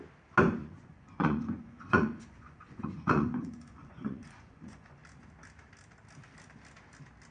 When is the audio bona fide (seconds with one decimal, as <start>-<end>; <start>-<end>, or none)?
0.0-0.6; 5.0-7.3